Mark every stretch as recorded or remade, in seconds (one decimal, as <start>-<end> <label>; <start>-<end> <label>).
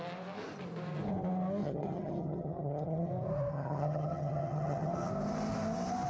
0.0-1.6 recorded; 1.6-3.1 remade; 3.1-3.5 recorded; 3.5-5.1 remade; 5.1-6.1 recorded